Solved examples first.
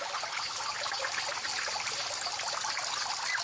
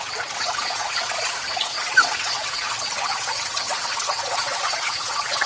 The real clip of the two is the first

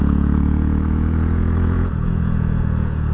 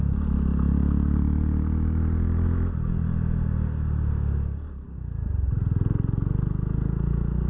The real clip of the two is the second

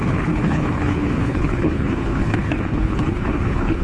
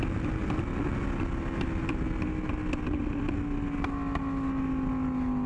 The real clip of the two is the second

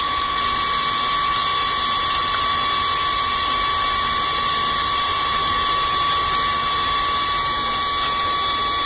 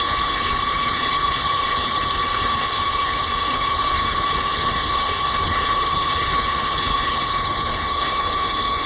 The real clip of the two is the first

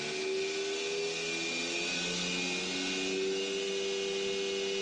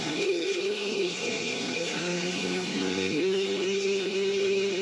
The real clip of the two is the first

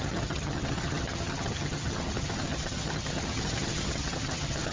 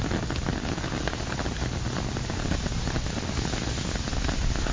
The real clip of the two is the second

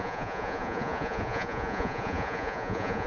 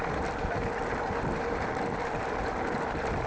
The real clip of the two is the second